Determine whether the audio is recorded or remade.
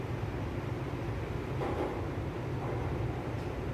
recorded